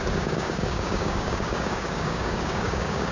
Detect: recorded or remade remade